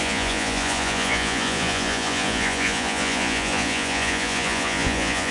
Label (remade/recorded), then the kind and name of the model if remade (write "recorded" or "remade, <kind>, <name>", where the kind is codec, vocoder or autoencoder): remade, vocoder, Vocos